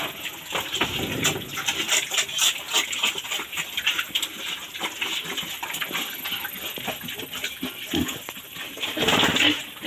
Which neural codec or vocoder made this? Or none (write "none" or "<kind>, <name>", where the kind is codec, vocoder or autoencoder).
none